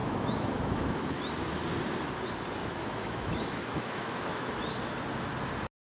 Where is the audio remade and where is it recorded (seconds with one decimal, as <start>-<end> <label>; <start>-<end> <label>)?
0.0-1.2 remade; 1.2-2.6 recorded; 2.6-4.5 remade; 4.5-5.9 recorded